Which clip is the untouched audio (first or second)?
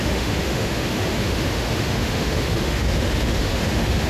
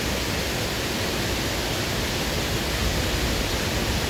second